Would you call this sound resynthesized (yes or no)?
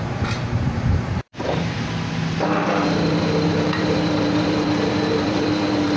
yes